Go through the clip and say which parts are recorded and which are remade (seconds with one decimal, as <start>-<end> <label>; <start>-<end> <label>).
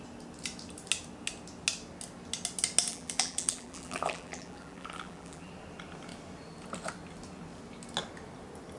0.0-2.9 recorded; 2.9-5.5 remade; 5.5-8.8 recorded